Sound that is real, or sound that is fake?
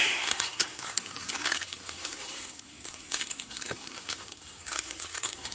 fake